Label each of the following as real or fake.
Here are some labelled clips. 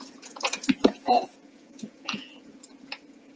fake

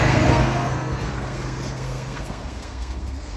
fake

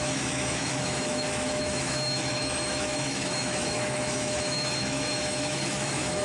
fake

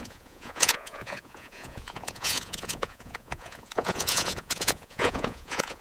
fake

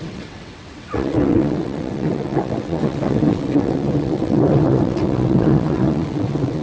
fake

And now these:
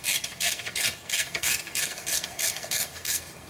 fake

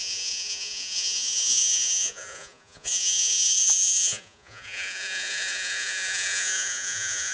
fake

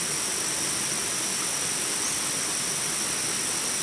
real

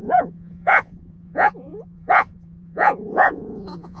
fake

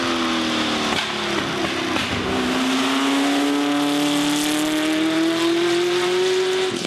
real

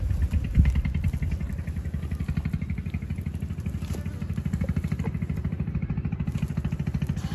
real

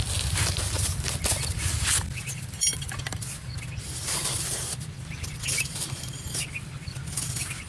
real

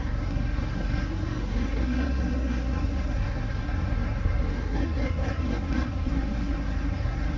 fake